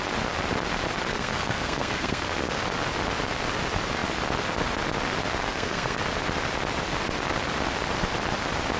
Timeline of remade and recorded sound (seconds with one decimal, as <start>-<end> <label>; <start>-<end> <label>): 0.0-1.1 recorded; 1.1-2.6 remade; 2.6-5.4 recorded; 5.4-6.0 remade; 6.0-8.8 recorded